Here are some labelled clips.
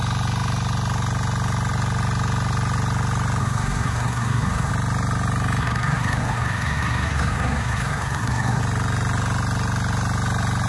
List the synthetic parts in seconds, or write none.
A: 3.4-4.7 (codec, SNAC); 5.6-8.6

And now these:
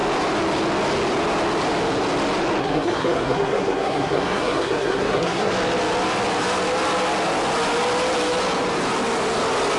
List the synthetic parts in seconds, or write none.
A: 2.6-5.5 (codec, SNAC)

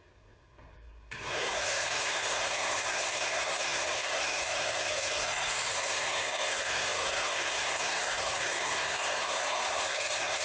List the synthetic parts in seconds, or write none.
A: 0.0-10.4 (codec, SNAC)

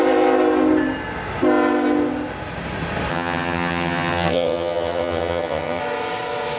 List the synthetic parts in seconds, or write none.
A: 3.1-5.8 (vocoder, HiFi-GAN)

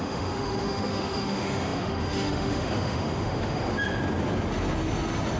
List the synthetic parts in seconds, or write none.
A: 0.0-3.6 (autoencoder, DAC-VAE)

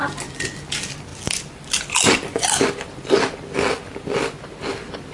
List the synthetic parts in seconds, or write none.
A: none

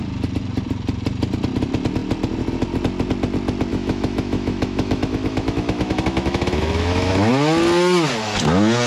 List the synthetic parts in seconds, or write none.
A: 3.7-7.3 (autoencoder, DAC-VAE)